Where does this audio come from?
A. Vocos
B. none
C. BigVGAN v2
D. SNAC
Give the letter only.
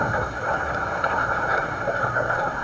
D